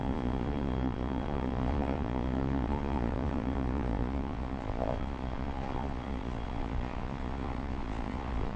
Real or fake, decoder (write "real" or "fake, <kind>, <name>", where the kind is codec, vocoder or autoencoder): fake, vocoder, Vocos